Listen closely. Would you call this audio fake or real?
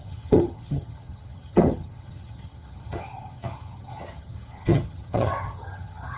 fake